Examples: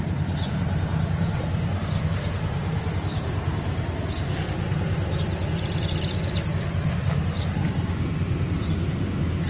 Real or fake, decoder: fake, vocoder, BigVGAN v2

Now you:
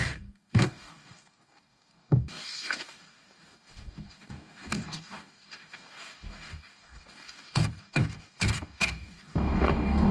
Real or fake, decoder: fake, codec, DAC